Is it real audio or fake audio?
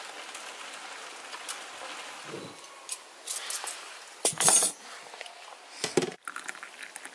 real